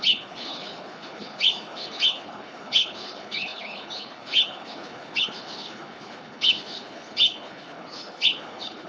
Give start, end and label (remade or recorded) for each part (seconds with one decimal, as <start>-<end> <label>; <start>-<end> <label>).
0.0-8.9 remade